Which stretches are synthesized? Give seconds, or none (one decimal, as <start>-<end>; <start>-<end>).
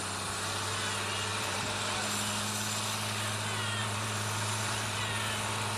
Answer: 1.3-1.9; 3.8-5.0